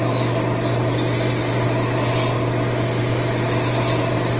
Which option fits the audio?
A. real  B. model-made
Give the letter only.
A